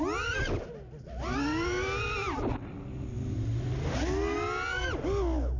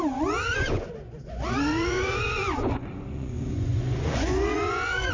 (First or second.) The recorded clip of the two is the first